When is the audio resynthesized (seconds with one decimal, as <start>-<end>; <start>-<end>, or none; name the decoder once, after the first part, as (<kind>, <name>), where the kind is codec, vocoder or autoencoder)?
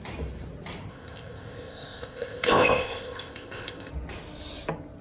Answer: 0.9-3.9 (codec, ZipCodec)